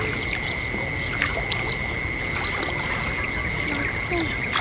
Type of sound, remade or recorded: recorded